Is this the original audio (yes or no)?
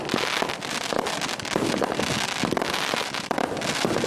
yes